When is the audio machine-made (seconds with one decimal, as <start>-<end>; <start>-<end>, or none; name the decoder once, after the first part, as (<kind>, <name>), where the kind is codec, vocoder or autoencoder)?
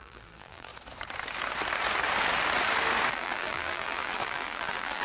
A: 0.0-0.7 (vocoder, BigVGAN v2); 3.1-5.0